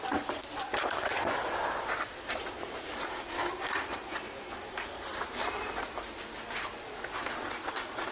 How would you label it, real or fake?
real